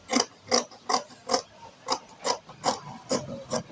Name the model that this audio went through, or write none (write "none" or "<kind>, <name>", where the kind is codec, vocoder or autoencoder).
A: none